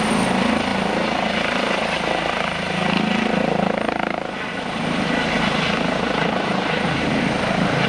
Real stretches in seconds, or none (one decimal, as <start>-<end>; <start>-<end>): 0.0-7.9